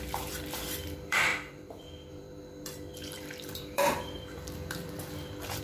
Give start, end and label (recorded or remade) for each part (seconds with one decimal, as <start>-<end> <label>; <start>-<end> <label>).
0.0-5.6 remade